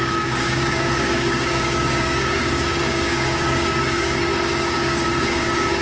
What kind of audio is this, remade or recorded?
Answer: remade